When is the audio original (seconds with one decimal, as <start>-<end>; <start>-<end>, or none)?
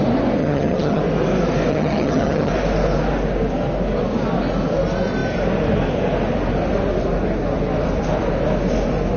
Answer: 0.0-0.4; 1.0-1.7; 2.5-9.2